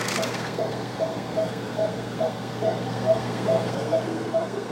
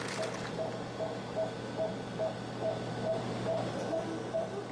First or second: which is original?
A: second